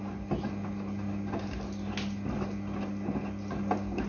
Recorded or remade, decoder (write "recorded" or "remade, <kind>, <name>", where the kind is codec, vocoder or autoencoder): recorded